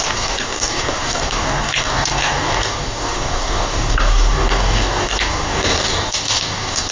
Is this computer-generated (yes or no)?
yes